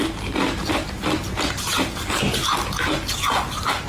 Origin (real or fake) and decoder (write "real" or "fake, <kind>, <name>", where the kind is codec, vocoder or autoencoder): real